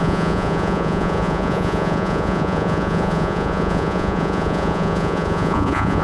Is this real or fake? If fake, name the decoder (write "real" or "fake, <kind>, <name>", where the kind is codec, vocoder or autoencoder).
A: fake, vocoder, Vocos